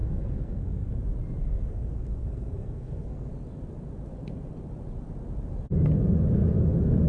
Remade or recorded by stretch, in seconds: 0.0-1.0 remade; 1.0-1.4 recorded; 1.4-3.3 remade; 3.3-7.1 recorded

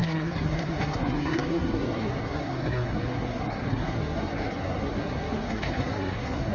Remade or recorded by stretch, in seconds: 0.0-6.5 remade

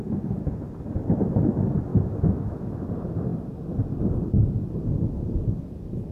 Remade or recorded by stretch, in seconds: 0.0-1.9 recorded; 1.9-2.9 remade; 2.9-6.1 recorded

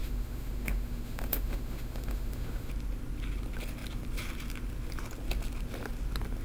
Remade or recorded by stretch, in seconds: 0.0-2.7 remade; 2.7-6.4 recorded

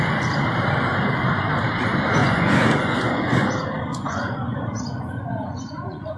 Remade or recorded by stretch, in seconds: 0.0-2.2 recorded; 2.2-3.5 remade; 3.5-3.9 recorded; 3.9-6.2 remade

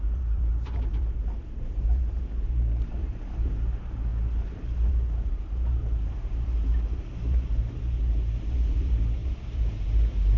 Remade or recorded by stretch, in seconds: 0.0-10.4 remade